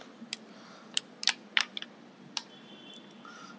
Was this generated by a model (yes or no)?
no